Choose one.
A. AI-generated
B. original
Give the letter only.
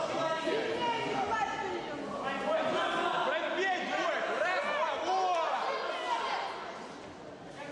B